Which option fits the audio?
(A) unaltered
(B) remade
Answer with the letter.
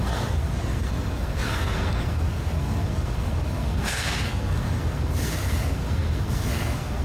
B